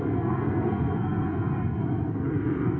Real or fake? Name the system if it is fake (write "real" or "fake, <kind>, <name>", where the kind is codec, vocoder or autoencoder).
fake, codec, SNAC